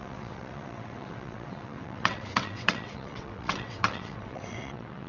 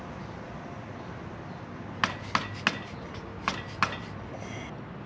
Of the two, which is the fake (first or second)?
first